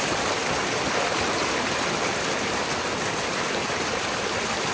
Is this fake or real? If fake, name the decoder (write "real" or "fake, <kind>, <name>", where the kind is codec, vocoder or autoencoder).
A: real